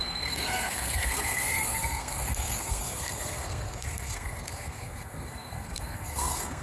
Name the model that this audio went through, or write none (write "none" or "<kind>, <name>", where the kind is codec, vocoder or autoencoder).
codec, SNAC